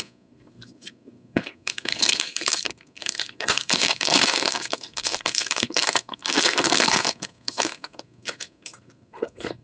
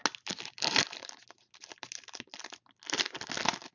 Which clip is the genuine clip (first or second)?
second